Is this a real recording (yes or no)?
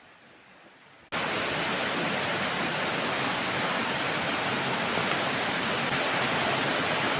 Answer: yes